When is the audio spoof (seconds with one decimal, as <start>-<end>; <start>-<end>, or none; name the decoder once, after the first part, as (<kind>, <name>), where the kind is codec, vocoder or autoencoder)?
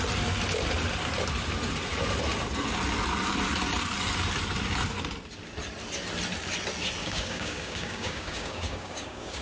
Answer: 7.0-9.4 (codec, DAC)